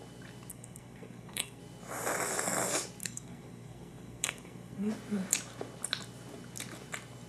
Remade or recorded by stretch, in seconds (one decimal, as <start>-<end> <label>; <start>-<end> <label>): 0.0-0.5 recorded; 0.5-1.6 remade; 1.6-3.0 recorded; 3.0-4.9 remade; 4.9-7.3 recorded